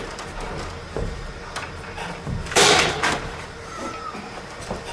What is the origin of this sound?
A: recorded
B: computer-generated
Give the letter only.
B